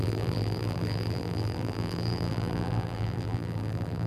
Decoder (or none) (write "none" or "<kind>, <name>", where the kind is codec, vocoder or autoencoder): vocoder, BigVGAN v2